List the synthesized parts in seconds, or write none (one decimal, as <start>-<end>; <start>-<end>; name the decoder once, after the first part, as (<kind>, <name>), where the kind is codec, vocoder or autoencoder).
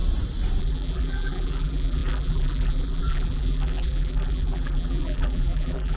0.6-6.0 (vocoder, BigVGAN v2)